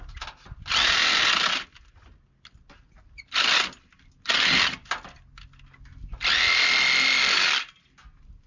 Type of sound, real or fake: real